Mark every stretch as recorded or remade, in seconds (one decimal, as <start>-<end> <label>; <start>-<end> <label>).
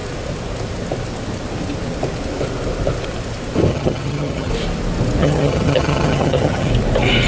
0.0-3.7 recorded; 3.7-4.5 remade; 4.5-5.2 recorded; 5.2-6.7 remade; 6.7-7.3 recorded